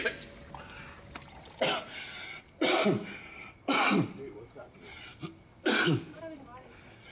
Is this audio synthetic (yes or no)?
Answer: no